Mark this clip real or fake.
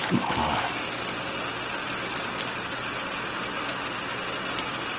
real